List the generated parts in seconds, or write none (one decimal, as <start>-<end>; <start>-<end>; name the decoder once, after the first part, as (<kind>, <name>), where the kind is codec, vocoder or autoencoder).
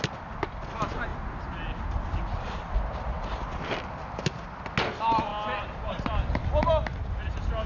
none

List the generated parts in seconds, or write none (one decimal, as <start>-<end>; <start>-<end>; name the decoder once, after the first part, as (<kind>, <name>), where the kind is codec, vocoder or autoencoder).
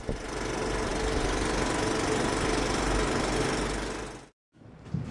none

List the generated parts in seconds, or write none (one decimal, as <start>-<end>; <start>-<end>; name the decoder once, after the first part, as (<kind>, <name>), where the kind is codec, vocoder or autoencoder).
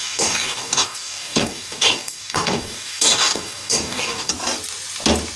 0.0-4.3 (codec, DAC)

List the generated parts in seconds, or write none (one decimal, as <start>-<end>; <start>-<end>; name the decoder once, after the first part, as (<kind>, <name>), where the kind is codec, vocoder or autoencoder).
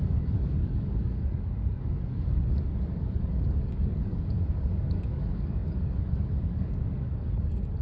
0.0-7.8 (codec, DAC)